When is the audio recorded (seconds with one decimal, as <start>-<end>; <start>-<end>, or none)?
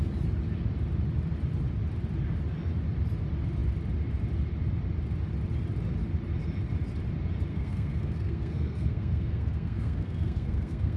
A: 0.0-7.5